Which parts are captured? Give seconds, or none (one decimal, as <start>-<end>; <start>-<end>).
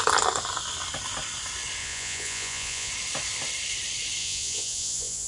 0.0-1.8; 2.9-4.2